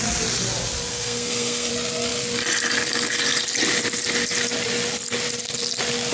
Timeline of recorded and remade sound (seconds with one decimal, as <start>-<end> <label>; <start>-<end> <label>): 0.0-0.9 recorded; 0.9-1.7 remade; 1.7-6.1 recorded